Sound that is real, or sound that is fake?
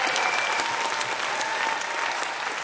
real